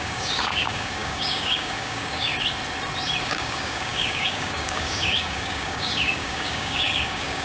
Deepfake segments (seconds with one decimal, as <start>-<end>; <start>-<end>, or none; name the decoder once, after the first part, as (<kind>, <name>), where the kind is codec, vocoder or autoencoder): 0.0-2.3 (codec, DAC); 3.2-7.4